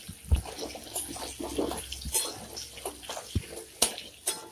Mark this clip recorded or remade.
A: recorded